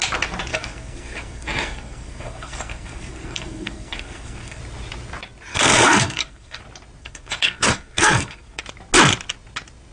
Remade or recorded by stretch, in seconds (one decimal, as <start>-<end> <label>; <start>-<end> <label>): 0.0-0.5 recorded; 0.5-4.6 remade; 4.6-5.5 recorded; 5.5-6.6 remade; 6.6-7.0 recorded; 7.0-8.6 remade; 8.6-9.9 recorded